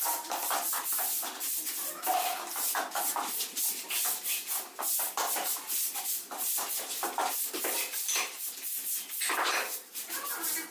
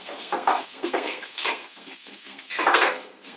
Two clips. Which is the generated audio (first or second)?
second